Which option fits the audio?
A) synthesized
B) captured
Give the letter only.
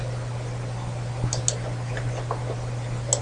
B